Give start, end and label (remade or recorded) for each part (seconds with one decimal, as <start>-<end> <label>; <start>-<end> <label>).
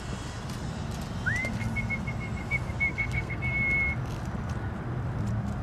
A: 0.0-2.9 recorded; 2.9-3.4 remade; 3.4-5.6 recorded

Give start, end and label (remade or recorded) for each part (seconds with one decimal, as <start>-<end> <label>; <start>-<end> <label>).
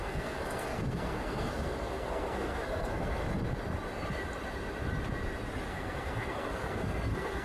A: 0.0-3.2 remade; 3.2-5.7 recorded; 5.7-7.4 remade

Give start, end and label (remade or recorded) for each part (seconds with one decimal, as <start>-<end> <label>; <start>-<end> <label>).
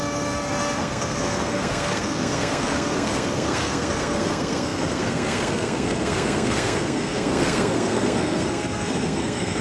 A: 0.0-9.6 remade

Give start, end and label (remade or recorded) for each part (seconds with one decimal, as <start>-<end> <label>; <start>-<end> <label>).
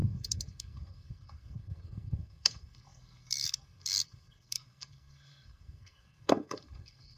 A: 0.0-7.2 remade